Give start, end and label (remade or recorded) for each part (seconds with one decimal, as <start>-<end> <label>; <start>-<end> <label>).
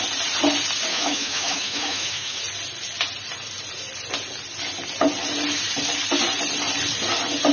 0.0-0.9 recorded; 0.9-2.4 remade; 2.4-7.5 recorded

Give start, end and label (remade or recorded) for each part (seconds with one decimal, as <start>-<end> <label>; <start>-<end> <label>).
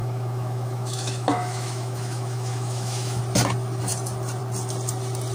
0.0-3.2 remade; 3.2-5.3 recorded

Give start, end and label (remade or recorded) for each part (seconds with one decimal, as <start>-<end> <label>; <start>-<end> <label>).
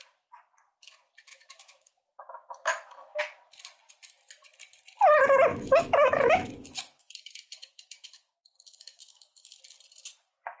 0.0-1.3 recorded; 1.3-3.2 remade; 3.2-5.5 recorded; 5.5-9.6 remade; 9.6-10.6 recorded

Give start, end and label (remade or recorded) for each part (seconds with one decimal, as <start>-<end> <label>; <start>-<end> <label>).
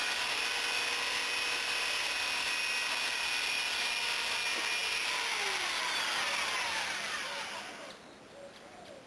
0.0-9.1 recorded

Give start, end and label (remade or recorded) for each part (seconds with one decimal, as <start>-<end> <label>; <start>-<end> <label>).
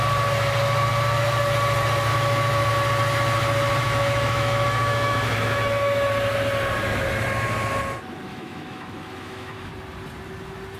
0.0-2.1 recorded; 2.1-2.7 remade; 2.7-3.8 recorded; 3.8-6.1 remade; 6.1-8.3 recorded; 8.3-9.7 remade; 9.7-10.8 recorded